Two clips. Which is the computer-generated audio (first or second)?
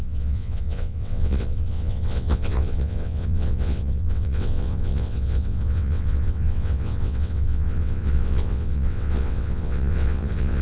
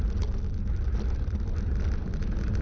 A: first